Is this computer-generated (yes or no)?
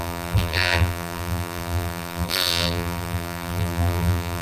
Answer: yes